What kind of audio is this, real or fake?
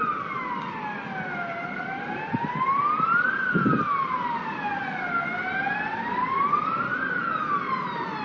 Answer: real